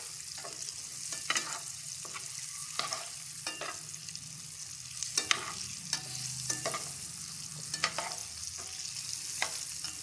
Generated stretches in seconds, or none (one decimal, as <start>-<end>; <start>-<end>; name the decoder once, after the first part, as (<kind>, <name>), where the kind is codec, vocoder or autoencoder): 1.4-2.0 (vocoder, BigVGAN v2)